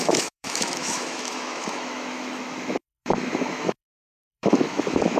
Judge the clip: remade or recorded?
remade